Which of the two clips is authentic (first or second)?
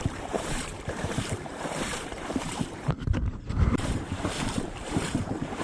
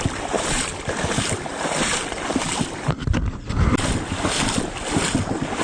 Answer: second